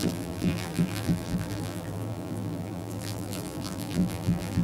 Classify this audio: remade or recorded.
remade